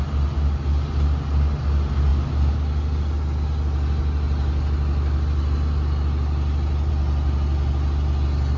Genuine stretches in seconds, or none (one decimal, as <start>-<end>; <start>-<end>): 0.0-8.6